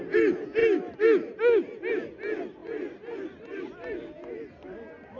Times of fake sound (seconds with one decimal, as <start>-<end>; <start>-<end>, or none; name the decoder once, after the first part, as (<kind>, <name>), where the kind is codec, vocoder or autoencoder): none